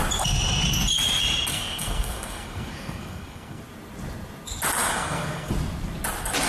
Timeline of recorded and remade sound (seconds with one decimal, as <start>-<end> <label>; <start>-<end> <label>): 0.0-1.5 recorded; 1.5-3.6 remade; 3.6-4.9 recorded; 4.9-5.5 remade; 5.5-6.5 recorded